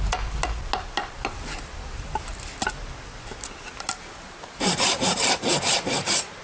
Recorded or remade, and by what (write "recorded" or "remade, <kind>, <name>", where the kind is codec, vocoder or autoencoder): recorded